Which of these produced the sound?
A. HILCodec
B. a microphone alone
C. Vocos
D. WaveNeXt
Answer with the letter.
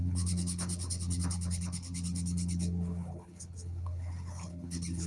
A